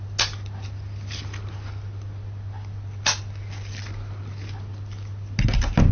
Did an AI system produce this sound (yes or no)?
no